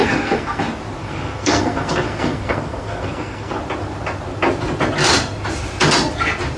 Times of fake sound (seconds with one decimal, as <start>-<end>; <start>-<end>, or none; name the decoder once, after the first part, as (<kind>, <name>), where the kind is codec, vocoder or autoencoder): 0.0-0.6 (codec, SNAC); 1.0-3.6